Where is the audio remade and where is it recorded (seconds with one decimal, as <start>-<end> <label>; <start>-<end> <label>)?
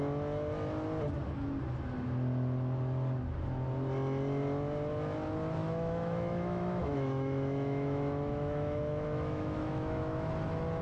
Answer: 0.0-5.6 recorded; 5.6-10.3 remade; 10.3-10.8 recorded